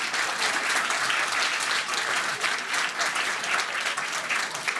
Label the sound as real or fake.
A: real